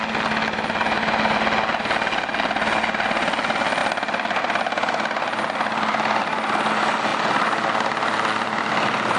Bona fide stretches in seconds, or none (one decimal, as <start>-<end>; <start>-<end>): 0.0-9.2